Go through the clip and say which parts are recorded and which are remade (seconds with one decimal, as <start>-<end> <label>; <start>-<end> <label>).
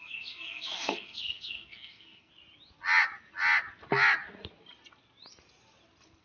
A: 0.0-2.3 remade; 2.3-6.2 recorded